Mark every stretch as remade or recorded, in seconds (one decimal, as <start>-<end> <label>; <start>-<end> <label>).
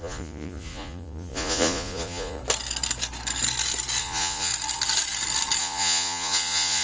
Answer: 0.0-2.4 remade; 2.4-4.0 recorded; 4.0-4.5 remade; 4.5-5.6 recorded; 5.6-6.8 remade